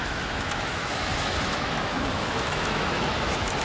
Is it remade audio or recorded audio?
remade